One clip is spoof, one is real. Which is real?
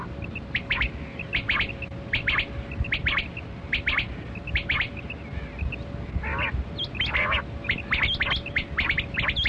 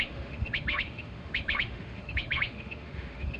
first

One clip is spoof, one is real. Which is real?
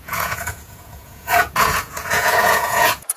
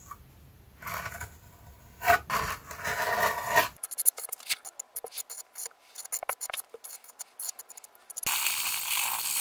second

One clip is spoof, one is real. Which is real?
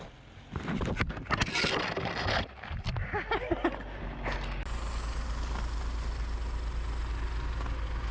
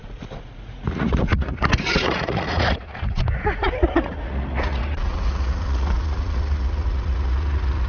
first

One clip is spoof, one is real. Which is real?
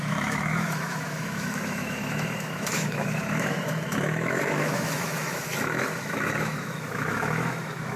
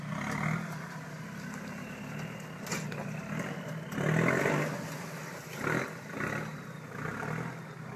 second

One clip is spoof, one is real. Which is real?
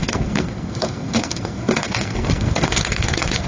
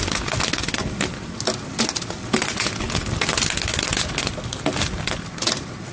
second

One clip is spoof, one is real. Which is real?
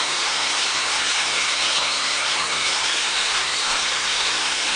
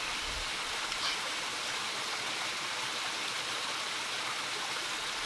second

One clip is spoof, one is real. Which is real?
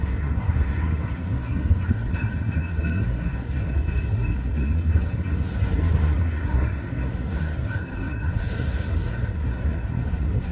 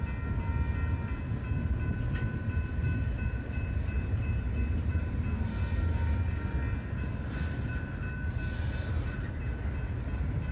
second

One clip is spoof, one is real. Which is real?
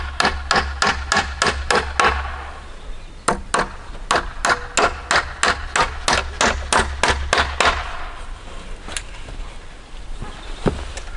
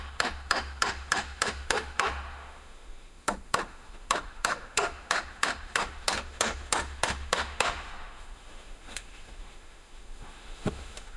first